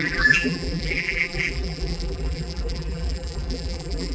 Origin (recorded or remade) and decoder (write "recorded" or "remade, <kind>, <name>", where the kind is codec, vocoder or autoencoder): remade, vocoder, BigVGAN v2